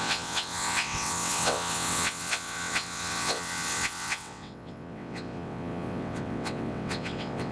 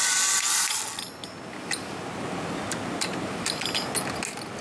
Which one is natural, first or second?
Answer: second